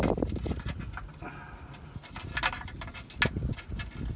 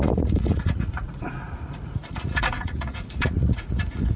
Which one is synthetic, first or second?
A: second